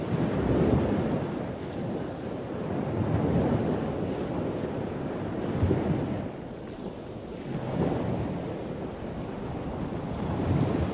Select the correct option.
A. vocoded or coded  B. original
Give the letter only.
B